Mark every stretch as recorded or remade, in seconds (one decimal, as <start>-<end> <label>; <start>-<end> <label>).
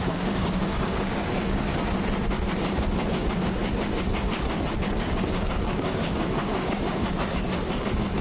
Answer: 0.0-1.7 remade; 1.7-3.1 recorded; 3.1-3.6 remade; 3.6-5.0 recorded; 5.0-8.2 remade